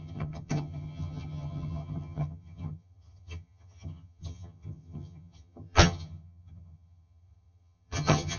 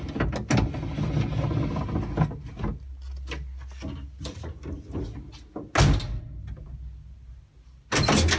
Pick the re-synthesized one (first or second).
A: first